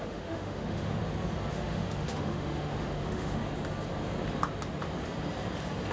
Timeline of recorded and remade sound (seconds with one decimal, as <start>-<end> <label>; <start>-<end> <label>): 0.0-1.0 remade; 1.0-1.5 recorded; 1.5-3.4 remade; 3.4-5.9 recorded